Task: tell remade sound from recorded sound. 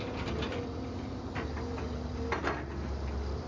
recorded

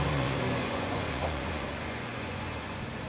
remade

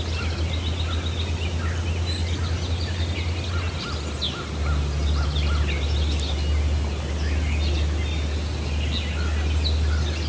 recorded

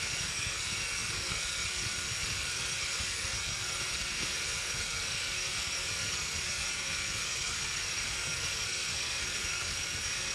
remade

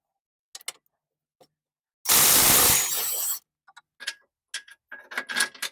recorded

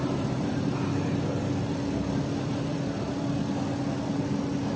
recorded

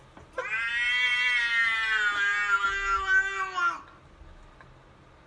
recorded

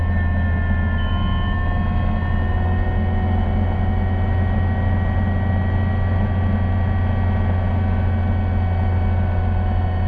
recorded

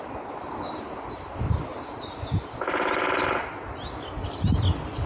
recorded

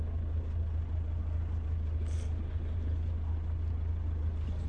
recorded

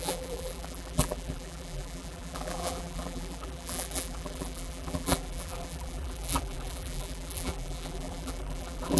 remade